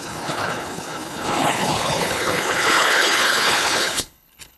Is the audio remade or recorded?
remade